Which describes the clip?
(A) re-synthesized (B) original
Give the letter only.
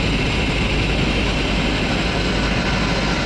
B